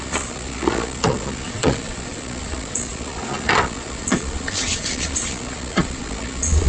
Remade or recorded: remade